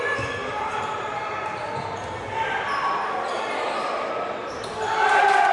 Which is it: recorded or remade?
recorded